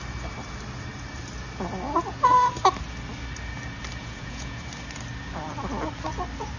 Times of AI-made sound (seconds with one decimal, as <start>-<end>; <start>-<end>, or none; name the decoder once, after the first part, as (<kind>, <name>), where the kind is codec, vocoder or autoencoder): 4.0-4.6 (vocoder, Vocos)